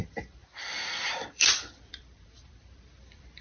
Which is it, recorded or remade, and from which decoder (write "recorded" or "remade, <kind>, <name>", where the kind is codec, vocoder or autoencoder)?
remade, vocoder, BigVGAN v2